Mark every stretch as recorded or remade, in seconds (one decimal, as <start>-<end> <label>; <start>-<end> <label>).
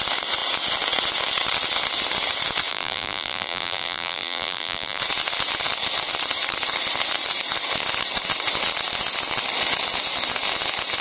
0.0-2.7 recorded; 2.7-5.0 remade; 5.0-11.0 recorded